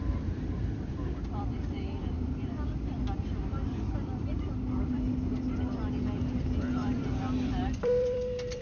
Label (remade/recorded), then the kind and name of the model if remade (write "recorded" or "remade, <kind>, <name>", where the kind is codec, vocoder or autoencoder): remade, vocoder, BigVGAN v2